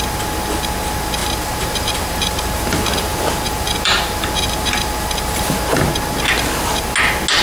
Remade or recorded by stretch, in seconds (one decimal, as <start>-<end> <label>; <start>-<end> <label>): 0.0-1.2 recorded; 1.2-5.4 remade; 5.4-7.4 recorded